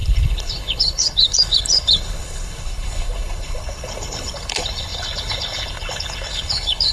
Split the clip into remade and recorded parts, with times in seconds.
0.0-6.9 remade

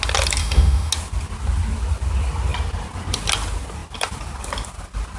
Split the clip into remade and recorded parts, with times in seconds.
0.0-0.4 recorded; 0.4-0.9 remade; 0.9-5.2 recorded

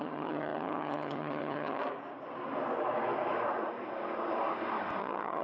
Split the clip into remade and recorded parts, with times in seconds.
0.0-1.8 remade; 1.8-5.0 recorded; 5.0-5.4 remade

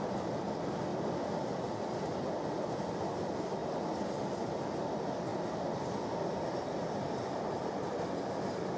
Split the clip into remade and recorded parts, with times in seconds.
0.0-8.8 recorded

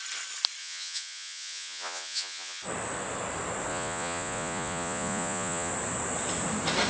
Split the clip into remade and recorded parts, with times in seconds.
0.0-0.6 recorded; 0.6-2.6 remade; 2.6-3.7 recorded; 3.7-5.7 remade; 5.7-6.9 recorded